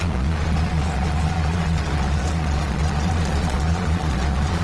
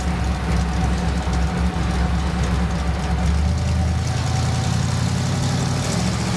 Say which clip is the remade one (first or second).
first